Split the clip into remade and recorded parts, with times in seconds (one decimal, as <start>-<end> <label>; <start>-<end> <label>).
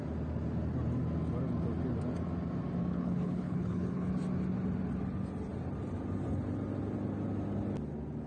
0.0-2.9 recorded; 2.9-4.1 remade; 4.1-8.3 recorded